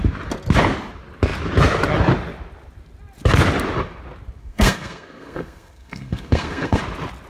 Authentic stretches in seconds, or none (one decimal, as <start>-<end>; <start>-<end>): 0.0-4.4; 6.8-7.3